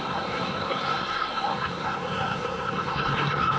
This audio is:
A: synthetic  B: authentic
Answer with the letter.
A